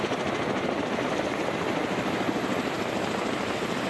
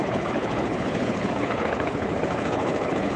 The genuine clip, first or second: first